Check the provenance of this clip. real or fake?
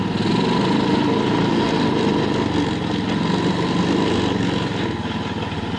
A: real